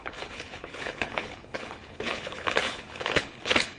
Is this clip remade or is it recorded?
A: remade